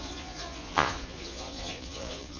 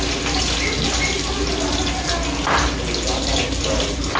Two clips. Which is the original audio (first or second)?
second